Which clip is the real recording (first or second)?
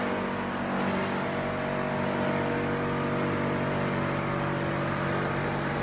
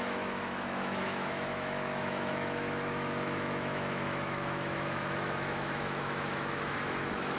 first